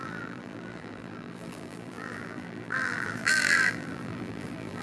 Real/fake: fake